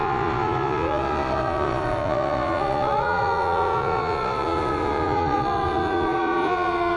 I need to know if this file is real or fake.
fake